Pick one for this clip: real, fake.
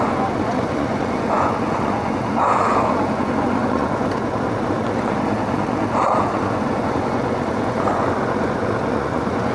fake